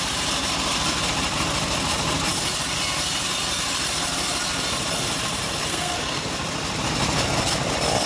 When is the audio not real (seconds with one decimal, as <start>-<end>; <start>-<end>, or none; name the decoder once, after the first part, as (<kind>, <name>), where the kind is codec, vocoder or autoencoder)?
5.7-6.3 (codec, SNAC)